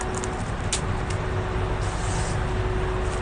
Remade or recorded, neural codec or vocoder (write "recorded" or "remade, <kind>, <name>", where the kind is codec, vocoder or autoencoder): recorded